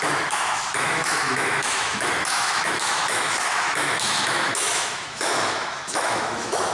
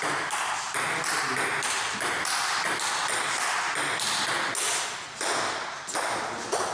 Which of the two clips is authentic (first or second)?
second